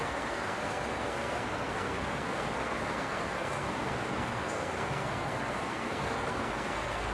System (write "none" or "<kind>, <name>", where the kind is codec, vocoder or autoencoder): codec, SNAC